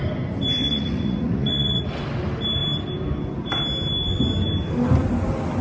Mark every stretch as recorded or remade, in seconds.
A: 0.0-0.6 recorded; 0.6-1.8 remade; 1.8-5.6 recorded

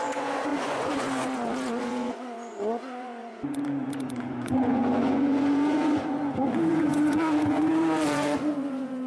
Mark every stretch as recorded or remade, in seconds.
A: 0.0-9.1 remade

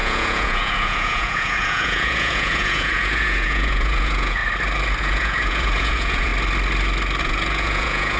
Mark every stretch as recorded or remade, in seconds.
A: 0.0-4.4 remade; 4.4-5.0 recorded; 5.0-6.3 remade; 6.3-7.2 recorded; 7.2-8.2 remade

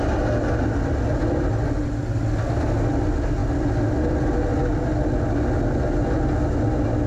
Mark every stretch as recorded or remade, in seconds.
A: 0.0-7.1 recorded

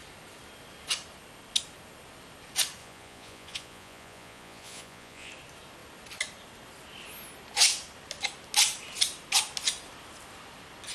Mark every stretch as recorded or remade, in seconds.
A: 0.0-2.8 recorded; 2.8-5.3 remade; 5.3-10.9 recorded

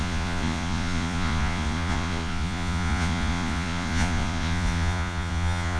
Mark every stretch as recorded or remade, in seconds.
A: 0.0-5.8 remade